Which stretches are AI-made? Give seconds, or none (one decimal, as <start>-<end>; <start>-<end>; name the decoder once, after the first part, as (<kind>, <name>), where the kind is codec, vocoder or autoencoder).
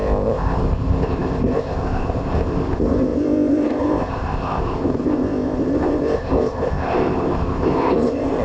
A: 0.0-8.4 (codec, ZipCodec)